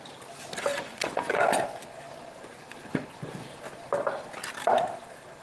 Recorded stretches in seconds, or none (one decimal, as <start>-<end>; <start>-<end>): 0.0-0.7; 3.6-5.4

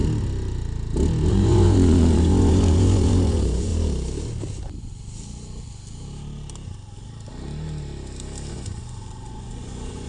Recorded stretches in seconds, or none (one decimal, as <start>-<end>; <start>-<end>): 0.0-1.3; 3.7-8.5

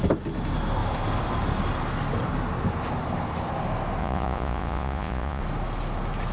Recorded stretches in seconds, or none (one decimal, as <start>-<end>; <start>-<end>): 0.0-4.0; 5.4-6.3

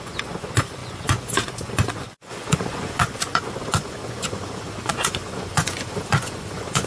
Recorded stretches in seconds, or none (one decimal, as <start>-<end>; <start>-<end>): none

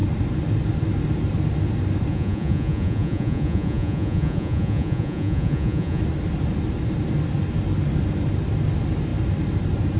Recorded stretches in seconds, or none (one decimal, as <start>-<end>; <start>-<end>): 0.0-2.1; 6.0-10.0

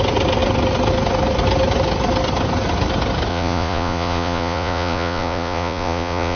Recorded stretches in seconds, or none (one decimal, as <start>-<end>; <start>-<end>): 0.0-3.3